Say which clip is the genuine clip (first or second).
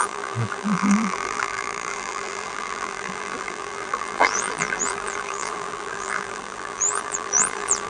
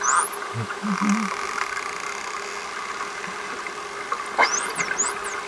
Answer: second